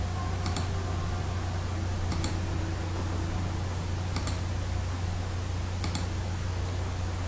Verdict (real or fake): real